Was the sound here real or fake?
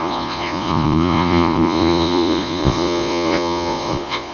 fake